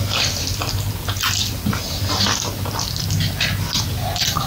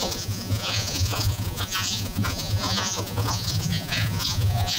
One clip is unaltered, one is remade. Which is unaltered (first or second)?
first